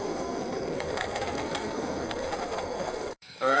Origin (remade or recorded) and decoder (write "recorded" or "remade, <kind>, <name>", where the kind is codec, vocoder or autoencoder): remade, codec, SNAC